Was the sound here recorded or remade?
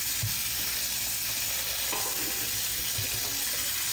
recorded